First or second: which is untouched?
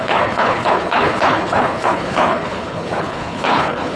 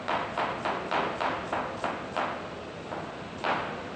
second